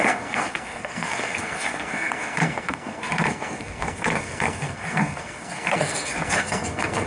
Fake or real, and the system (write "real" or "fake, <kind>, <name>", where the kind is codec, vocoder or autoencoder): fake, codec, SNAC